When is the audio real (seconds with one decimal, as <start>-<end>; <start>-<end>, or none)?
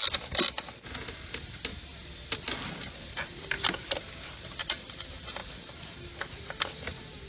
0.0-7.3